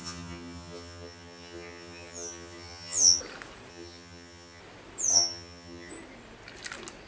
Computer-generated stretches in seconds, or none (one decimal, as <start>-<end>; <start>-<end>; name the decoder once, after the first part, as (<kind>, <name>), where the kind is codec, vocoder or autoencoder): 0.0-3.2 (vocoder, HiFi-GAN); 3.7-4.6; 5.1-5.9